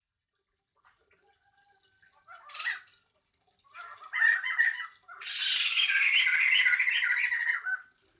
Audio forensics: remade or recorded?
recorded